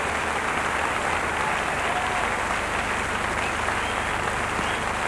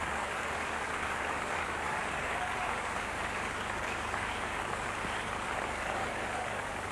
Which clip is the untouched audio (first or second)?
first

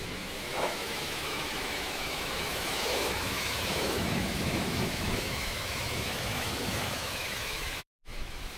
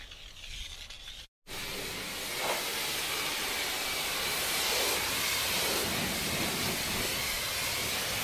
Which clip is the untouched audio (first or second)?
second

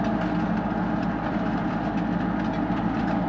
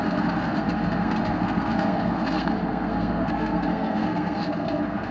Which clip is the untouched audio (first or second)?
first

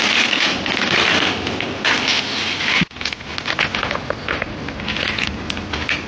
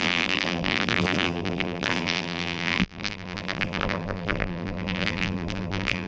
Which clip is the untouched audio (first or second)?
first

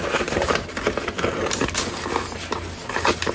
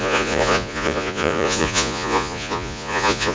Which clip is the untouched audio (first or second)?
first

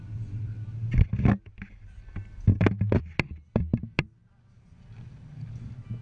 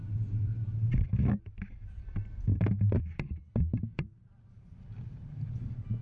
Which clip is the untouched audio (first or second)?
first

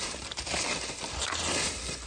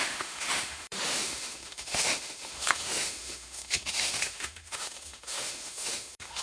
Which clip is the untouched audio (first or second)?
first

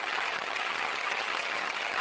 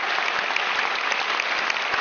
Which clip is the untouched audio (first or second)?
second